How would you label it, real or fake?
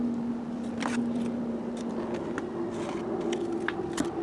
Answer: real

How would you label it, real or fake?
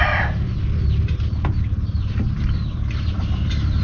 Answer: fake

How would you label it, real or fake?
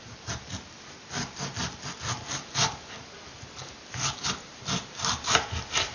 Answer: real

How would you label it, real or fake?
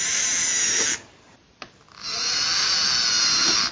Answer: real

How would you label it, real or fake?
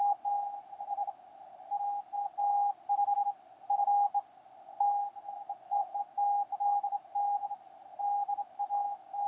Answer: real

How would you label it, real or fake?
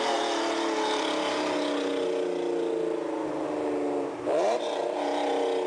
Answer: real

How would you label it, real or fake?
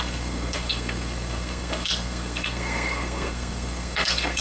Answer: fake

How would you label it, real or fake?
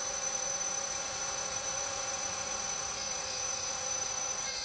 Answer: fake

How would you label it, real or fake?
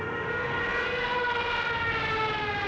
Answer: real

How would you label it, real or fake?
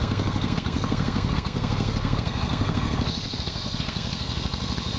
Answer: fake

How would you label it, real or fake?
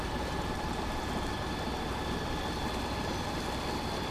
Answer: real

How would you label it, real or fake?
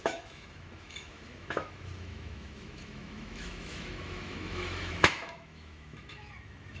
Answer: fake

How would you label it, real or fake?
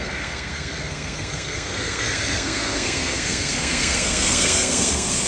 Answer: fake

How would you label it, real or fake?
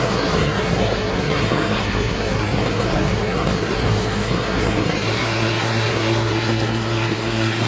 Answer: fake